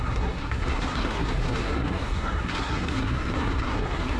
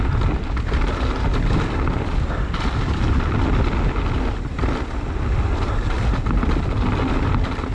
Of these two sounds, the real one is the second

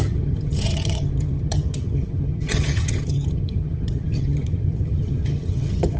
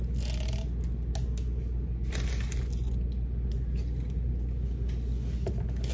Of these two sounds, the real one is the second